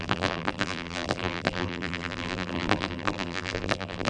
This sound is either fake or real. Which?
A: fake